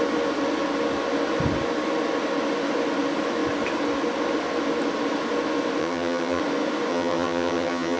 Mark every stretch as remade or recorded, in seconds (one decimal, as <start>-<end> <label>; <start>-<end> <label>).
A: 0.0-5.8 recorded; 5.8-6.4 remade; 6.4-6.9 recorded; 6.9-8.0 remade